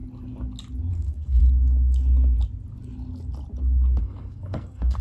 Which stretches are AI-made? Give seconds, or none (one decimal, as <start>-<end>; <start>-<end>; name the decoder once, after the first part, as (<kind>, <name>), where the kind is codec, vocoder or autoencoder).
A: 0.9-1.4 (codec, SNAC); 4.0-5.0